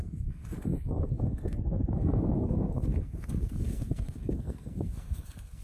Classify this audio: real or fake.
fake